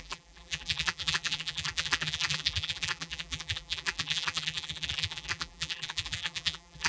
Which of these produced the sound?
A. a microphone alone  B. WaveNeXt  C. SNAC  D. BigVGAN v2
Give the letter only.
D